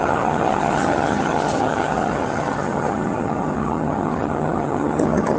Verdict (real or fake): fake